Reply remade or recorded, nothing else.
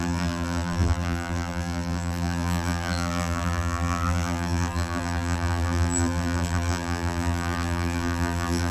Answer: remade